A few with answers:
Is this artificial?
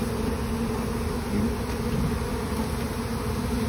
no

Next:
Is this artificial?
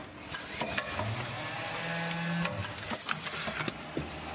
no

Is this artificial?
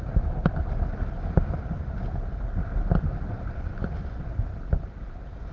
no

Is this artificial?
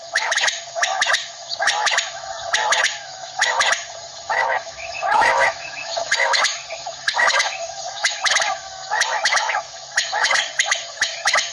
yes